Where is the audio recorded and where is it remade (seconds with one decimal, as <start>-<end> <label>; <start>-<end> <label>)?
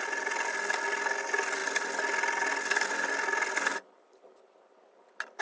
0.0-3.7 recorded; 3.7-4.5 remade; 4.5-5.4 recorded